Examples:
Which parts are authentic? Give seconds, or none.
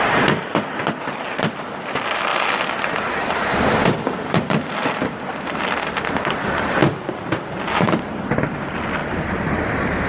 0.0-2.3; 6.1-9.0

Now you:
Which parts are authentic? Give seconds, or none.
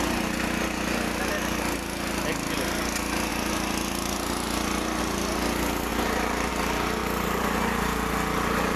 0.0-5.9; 6.5-7.0; 8.1-8.8